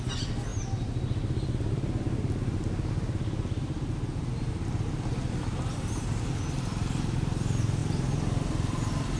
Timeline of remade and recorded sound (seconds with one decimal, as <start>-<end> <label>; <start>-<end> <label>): 0.0-9.2 recorded